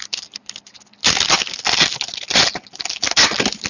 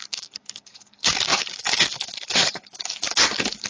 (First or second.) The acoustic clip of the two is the first